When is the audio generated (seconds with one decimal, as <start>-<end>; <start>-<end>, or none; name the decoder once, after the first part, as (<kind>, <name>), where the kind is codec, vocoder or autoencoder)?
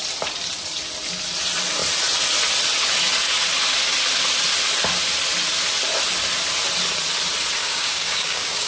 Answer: 7.6-8.7 (codec, DAC)